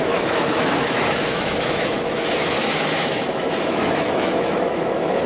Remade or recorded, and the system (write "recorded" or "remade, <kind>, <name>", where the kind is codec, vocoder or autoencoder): remade, autoencoder, DAC-VAE